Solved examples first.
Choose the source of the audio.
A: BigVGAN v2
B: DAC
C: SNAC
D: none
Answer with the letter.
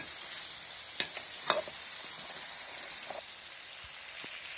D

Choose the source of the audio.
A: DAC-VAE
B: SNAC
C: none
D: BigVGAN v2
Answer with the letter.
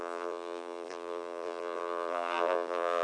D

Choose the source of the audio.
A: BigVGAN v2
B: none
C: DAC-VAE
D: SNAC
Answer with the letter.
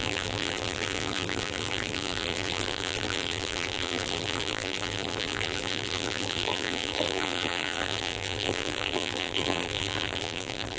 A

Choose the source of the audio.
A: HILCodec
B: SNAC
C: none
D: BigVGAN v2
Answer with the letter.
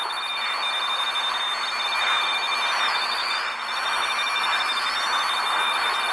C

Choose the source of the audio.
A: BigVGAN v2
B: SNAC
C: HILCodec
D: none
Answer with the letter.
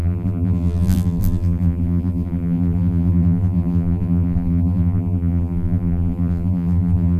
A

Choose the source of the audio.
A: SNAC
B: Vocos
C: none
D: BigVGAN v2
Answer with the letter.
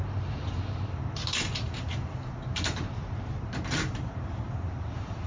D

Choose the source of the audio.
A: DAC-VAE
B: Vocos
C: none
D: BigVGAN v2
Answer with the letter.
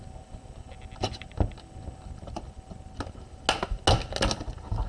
C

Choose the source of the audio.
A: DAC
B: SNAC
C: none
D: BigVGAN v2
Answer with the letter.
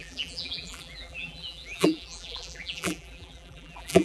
D